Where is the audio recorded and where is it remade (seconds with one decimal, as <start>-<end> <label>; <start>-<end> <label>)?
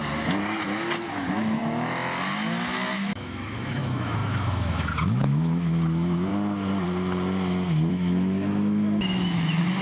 0.0-1.1 recorded; 1.1-1.6 remade; 1.6-2.9 recorded; 2.9-6.3 remade; 6.3-7.9 recorded; 7.9-9.8 remade